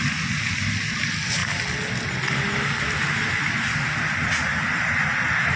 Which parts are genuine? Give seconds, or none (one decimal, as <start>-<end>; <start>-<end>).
0.0-5.6